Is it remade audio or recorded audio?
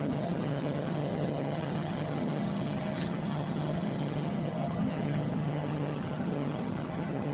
remade